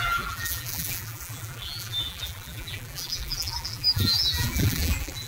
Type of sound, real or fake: fake